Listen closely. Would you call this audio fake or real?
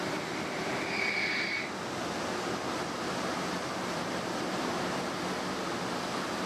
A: real